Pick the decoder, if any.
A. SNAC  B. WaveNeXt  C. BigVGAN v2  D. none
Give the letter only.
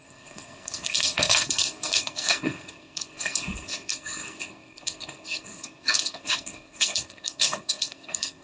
A